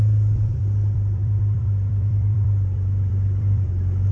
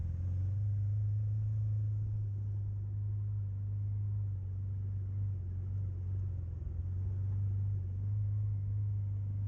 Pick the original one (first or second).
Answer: second